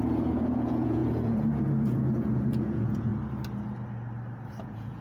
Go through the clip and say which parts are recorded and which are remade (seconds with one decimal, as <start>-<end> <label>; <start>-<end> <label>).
0.0-3.1 remade; 3.1-4.6 recorded; 4.6-5.0 remade